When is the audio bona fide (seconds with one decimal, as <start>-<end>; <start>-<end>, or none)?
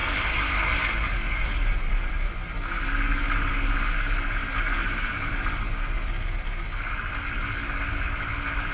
2.3-4.8; 5.6-8.7